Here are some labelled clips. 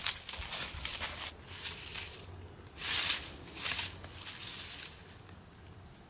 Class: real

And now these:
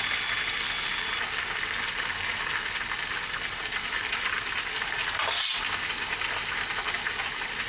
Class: real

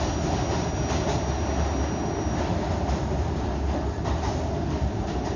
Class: real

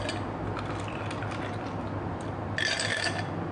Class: real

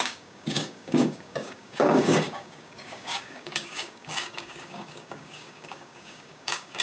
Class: fake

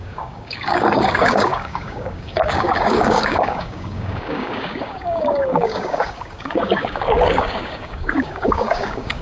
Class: fake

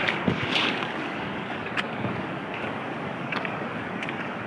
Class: fake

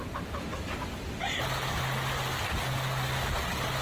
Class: real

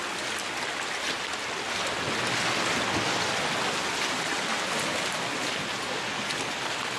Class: real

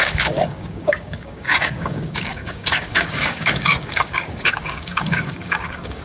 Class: fake